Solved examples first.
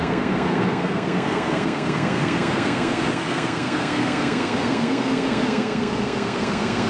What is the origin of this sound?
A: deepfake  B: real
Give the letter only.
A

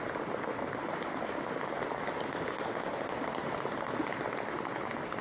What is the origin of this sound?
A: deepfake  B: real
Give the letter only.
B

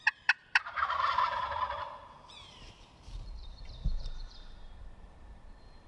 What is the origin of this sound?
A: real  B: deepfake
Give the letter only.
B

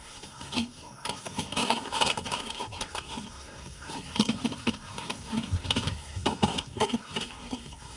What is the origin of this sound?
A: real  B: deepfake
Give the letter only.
B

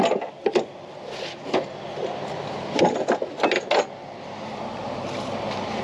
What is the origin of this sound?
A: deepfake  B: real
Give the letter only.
B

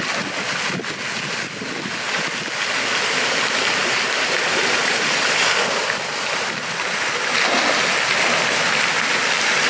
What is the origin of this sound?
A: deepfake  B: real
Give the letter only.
B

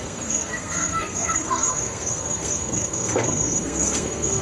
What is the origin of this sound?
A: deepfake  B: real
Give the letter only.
A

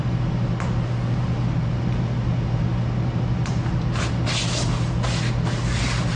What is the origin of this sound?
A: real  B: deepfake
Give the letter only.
A